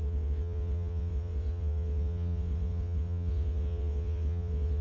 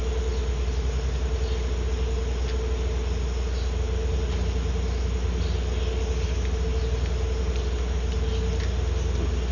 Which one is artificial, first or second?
first